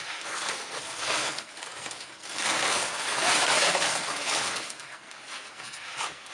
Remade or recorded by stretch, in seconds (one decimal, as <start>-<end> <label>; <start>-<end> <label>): 0.0-6.3 remade